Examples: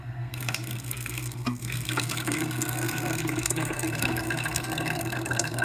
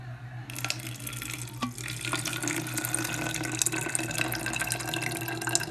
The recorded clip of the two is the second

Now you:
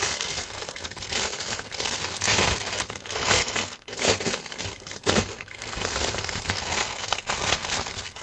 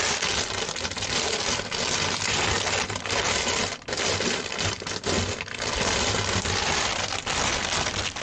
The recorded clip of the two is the second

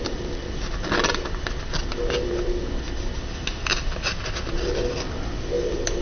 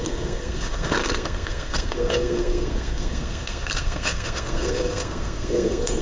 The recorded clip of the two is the first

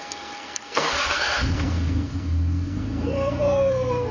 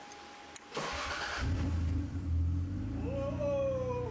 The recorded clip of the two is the second